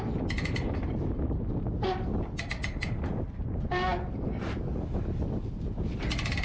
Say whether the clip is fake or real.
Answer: real